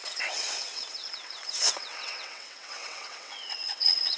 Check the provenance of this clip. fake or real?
fake